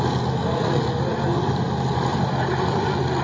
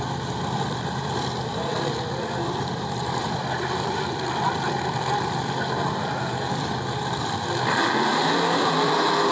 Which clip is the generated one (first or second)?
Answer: second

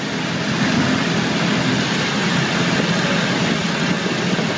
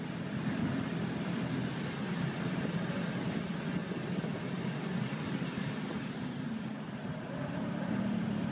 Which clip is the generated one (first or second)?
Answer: second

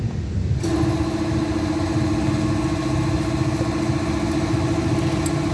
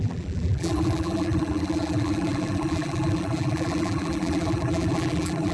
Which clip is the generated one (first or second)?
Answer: second